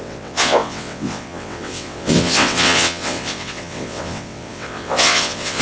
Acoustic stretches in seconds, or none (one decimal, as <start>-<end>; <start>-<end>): none